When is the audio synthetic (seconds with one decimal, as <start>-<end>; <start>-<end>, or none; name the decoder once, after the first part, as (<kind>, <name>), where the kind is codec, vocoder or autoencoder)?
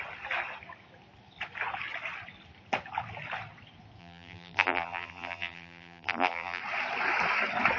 4.0-6.6 (vocoder, BigVGAN v2)